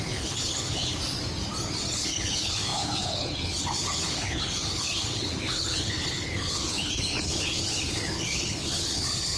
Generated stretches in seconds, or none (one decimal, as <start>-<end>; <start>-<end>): 0.0-1.0; 1.9-9.4